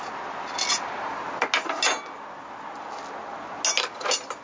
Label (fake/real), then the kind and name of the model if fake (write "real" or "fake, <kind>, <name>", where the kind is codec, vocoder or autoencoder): real